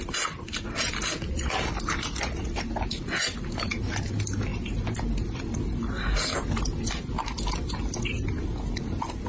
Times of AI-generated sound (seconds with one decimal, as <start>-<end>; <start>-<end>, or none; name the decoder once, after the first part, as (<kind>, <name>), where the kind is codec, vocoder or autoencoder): none

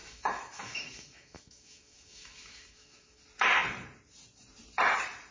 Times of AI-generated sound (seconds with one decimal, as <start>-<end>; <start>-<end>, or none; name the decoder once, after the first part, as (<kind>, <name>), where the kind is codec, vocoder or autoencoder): 0.0-3.2 (autoencoder, DAC-VAE)

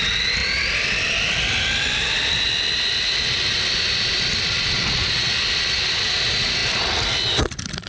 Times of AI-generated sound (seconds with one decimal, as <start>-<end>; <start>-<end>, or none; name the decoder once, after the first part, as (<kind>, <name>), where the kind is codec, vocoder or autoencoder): none

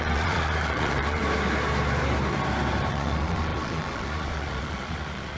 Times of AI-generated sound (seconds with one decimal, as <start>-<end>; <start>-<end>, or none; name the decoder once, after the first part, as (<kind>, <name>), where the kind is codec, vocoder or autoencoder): 0.0-1.2 (vocoder, Vocos); 2.9-5.4

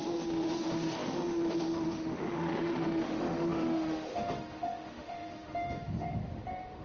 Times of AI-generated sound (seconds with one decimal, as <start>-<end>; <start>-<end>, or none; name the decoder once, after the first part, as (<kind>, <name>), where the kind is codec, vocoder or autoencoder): 0.0-6.8 (autoencoder, DAC-VAE)

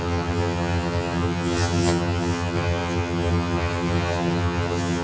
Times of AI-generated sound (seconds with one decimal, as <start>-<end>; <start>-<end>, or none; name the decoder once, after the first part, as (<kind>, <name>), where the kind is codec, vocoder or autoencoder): 0.0-5.0 (vocoder, HiFi-GAN)

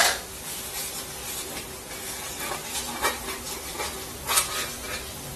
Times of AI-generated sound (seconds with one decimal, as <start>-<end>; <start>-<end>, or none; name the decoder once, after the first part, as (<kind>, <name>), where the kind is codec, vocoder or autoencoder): 2.6-3.4 (vocoder, BigVGAN v2)

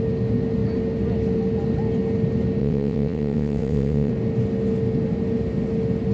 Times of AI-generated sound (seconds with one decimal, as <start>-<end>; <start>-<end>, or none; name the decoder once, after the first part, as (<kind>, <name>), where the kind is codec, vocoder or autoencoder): 2.6-4.1 (vocoder, WaveNeXt)